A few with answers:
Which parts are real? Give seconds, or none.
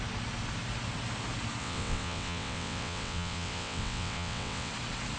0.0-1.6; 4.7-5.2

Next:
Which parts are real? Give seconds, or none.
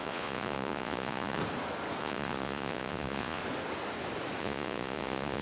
1.4-2.0; 3.4-4.4